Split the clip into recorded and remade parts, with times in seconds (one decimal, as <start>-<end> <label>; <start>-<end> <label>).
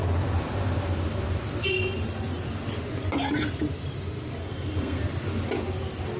0.0-4.4 recorded; 4.4-5.0 remade; 5.0-6.2 recorded